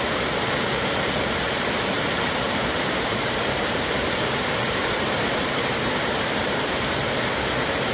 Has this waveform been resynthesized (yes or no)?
yes